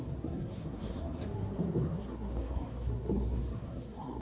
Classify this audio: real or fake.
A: fake